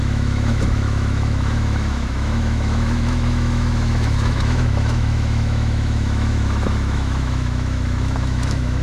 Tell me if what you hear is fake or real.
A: fake